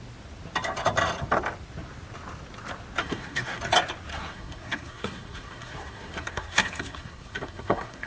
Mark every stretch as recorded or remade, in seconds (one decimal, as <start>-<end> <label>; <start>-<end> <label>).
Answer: 0.0-3.0 recorded; 3.0-3.6 remade; 3.6-4.1 recorded; 4.1-8.1 remade